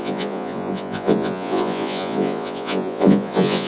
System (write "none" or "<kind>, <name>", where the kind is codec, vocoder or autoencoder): vocoder, Vocos